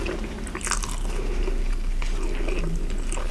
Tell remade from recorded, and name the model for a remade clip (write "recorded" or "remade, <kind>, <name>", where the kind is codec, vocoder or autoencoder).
recorded